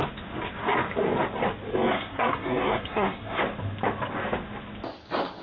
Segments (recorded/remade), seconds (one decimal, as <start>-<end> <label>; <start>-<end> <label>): 0.0-1.7 recorded; 1.7-3.4 remade; 3.4-5.4 recorded